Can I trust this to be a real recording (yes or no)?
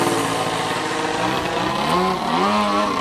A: yes